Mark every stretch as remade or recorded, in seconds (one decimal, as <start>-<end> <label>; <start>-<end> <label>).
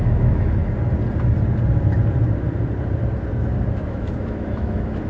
0.0-0.6 remade; 0.6-3.7 recorded; 3.7-5.1 remade